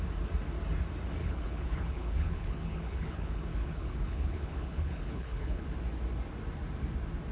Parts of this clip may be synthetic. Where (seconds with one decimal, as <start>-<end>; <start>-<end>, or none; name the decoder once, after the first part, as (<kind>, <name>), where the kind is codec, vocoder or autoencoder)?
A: 1.2-5.6 (codec, HILCodec)

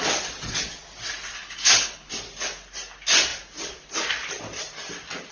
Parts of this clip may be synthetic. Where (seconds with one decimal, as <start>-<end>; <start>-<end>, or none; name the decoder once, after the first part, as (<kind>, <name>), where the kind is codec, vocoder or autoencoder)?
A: 1.4-2.1 (codec, HILCodec)

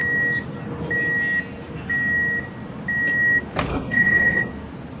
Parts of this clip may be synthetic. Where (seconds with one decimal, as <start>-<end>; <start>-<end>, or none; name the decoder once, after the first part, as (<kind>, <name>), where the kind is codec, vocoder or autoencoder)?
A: 3.7-4.5 (codec, HILCodec)

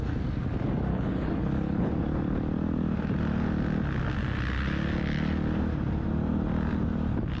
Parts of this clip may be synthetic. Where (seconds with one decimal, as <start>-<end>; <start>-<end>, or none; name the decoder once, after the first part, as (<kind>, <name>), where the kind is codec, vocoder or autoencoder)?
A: 0.9-1.9 (codec, HILCodec)

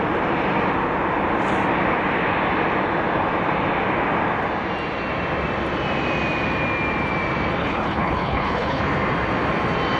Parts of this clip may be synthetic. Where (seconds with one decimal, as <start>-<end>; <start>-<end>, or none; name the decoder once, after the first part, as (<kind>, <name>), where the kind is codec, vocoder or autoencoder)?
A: 7.6-8.8 (codec, HILCodec)